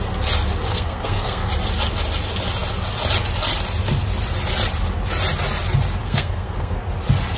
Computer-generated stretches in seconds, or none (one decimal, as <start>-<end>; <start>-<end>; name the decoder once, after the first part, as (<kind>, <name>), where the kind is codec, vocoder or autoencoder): 0.7-1.5 (codec, SNAC); 6.0-6.8